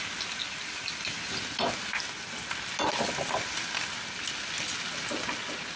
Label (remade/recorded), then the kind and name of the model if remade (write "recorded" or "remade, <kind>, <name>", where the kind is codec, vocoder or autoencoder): recorded